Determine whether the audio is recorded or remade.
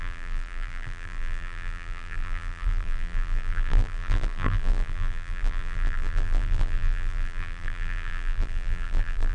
remade